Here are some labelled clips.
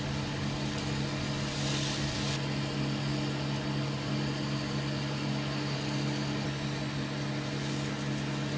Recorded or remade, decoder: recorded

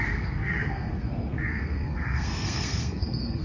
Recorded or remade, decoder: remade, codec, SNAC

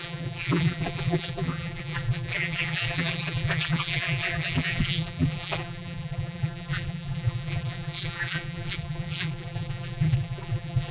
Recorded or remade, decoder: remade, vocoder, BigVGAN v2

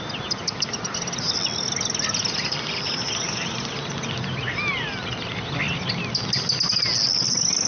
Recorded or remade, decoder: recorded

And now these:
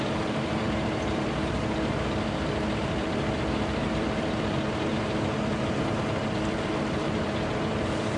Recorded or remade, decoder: remade, vocoder, BigVGAN v2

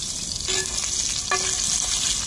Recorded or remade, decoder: recorded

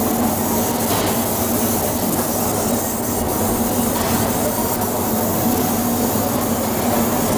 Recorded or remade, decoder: recorded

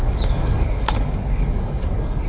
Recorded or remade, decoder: remade, codec, DAC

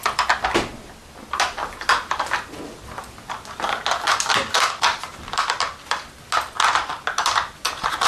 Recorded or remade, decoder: recorded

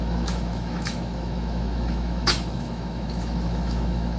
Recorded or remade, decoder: remade, autoencoder, DAC-VAE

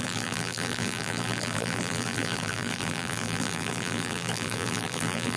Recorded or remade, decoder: remade, vocoder, BigVGAN v2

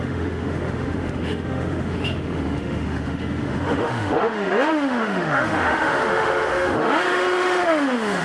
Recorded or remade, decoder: remade, autoencoder, DAC-VAE